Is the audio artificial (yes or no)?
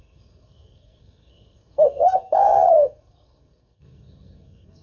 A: yes